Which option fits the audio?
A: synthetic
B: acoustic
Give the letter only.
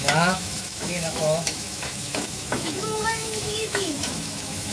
A